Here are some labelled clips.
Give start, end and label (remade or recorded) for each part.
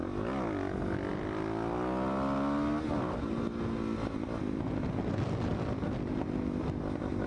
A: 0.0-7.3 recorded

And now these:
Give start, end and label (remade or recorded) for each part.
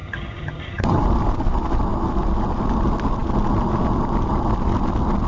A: 0.0-1.0 remade; 1.0-5.3 recorded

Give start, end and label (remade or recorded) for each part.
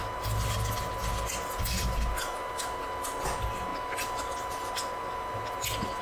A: 0.0-6.0 recorded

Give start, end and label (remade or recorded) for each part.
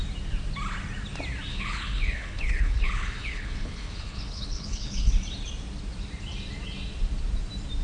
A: 0.0-1.5 recorded; 1.5-5.1 remade; 5.1-7.8 recorded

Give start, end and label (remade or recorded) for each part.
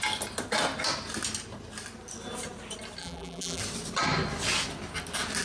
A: 0.0-3.0 recorded; 3.0-3.6 remade; 3.6-5.4 recorded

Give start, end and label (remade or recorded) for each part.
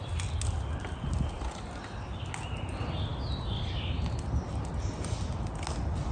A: 0.0-6.1 recorded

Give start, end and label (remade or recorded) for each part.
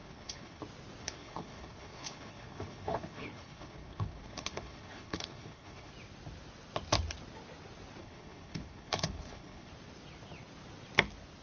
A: 0.0-0.6 remade; 0.6-1.0 recorded; 1.0-5.9 remade; 5.9-8.0 recorded; 8.0-9.7 remade; 9.7-11.4 recorded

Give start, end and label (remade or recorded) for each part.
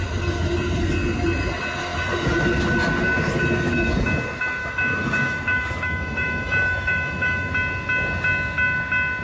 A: 0.0-4.6 recorded; 4.6-7.5 remade; 7.5-9.2 recorded